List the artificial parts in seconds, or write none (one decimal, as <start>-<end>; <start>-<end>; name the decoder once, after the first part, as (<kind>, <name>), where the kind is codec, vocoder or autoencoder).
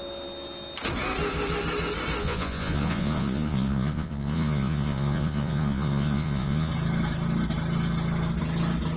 2.2-6.7 (vocoder, Vocos)